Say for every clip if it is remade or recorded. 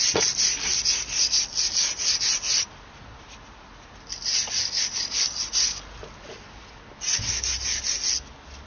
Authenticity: recorded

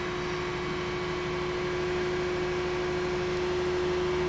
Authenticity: recorded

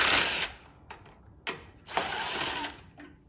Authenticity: recorded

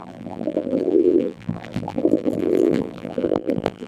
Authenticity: remade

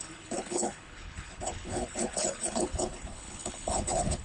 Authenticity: remade